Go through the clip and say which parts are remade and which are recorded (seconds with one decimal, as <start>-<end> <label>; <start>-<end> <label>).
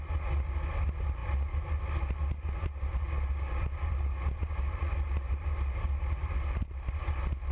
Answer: 0.0-7.5 recorded